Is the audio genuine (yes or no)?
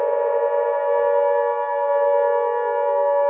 yes